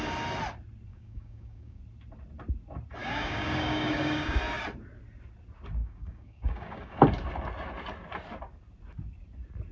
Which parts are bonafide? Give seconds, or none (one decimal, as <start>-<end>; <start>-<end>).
0.0-0.9; 1.8-3.0; 4.4-5.8; 7.0-9.7